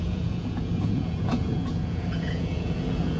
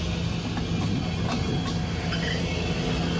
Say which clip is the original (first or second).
second